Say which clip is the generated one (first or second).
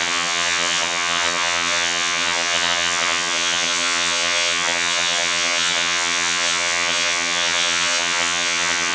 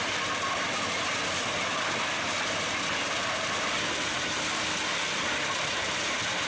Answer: first